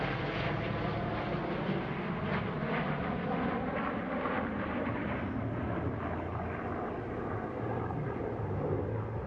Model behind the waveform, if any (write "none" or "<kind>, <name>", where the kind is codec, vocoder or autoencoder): none